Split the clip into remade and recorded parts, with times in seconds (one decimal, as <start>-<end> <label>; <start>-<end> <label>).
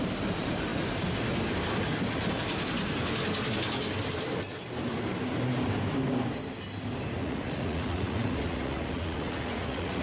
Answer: 0.0-7.2 recorded; 7.2-10.0 remade